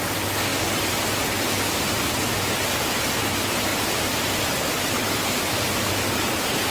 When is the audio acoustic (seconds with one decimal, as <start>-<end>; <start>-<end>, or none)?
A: 0.0-3.7; 5.2-6.7